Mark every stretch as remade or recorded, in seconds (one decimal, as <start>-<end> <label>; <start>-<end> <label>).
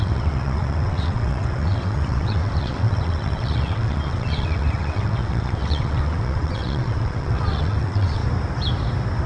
0.0-8.2 remade; 8.2-9.3 recorded